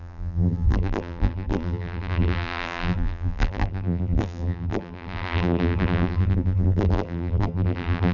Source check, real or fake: fake